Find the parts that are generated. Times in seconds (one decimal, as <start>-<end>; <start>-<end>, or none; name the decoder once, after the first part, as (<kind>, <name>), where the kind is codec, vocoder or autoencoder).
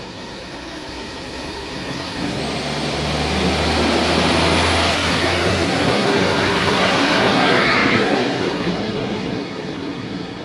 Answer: 0.0-2.4 (codec, SNAC); 4.9-10.4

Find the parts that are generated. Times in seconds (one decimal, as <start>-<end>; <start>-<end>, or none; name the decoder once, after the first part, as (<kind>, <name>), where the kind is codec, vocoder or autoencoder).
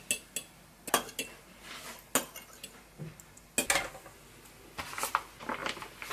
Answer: none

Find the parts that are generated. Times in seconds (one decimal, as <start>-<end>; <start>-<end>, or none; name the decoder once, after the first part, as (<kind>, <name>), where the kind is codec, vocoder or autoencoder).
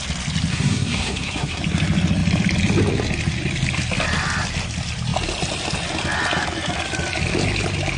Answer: 0.5-1.6 (codec, SNAC)